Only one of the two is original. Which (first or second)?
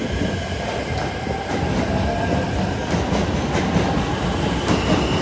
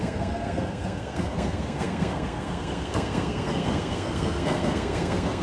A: first